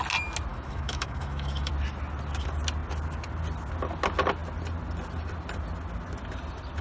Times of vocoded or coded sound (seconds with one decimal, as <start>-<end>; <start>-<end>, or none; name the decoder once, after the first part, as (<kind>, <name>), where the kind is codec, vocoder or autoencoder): 0.5-1.7 (autoencoder, DAC-VAE)